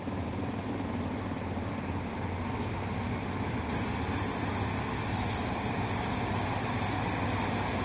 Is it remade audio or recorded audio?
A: recorded